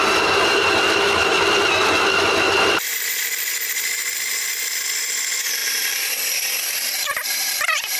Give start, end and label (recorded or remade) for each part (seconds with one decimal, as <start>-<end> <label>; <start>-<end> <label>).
0.0-5.6 recorded; 5.6-6.2 remade; 6.2-8.0 recorded